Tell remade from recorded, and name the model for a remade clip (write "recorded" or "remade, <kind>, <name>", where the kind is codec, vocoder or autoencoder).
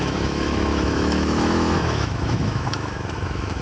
remade, autoencoder, DAC-VAE